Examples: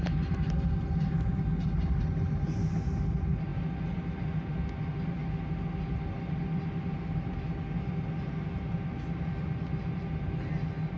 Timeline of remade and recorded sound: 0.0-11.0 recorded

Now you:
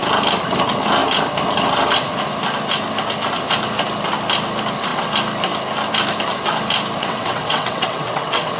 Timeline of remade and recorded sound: 0.0-7.0 recorded; 7.0-8.6 remade

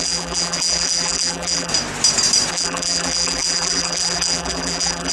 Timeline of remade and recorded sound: 0.0-1.7 remade; 1.7-2.5 recorded; 2.5-5.1 remade